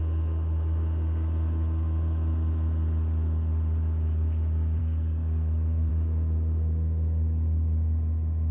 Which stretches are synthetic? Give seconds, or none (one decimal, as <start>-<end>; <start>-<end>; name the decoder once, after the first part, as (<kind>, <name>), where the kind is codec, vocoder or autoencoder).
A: 4.8-5.9 (codec, SNAC)